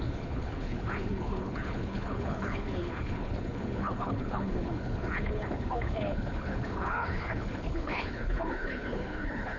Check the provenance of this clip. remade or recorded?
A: remade